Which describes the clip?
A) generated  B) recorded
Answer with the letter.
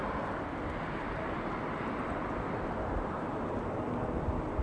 B